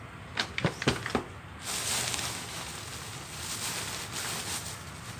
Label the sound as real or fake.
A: real